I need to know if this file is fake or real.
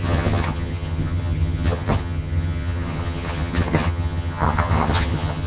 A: fake